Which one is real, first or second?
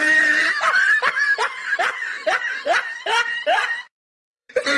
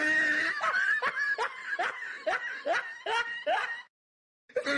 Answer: second